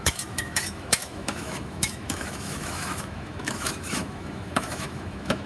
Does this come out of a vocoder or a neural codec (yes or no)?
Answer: yes